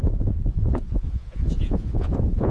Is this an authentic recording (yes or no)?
no